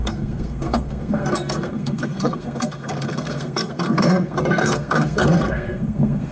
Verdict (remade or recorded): remade